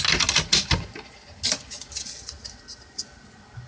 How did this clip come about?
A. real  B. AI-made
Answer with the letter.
A